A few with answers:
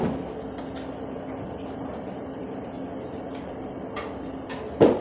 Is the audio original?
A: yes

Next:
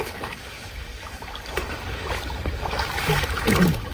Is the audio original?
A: no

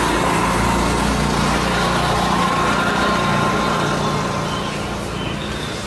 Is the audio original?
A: yes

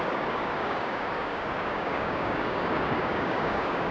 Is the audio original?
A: no